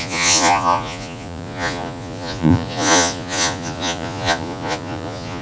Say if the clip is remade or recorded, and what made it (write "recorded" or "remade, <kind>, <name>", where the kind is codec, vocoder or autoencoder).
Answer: remade, vocoder, Vocos